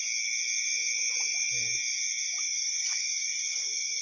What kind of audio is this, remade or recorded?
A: recorded